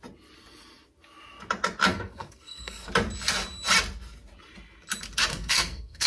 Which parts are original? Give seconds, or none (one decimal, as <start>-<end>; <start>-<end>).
0.0-1.9; 2.9-5.3